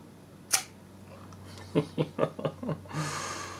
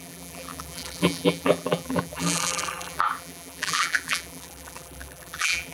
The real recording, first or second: first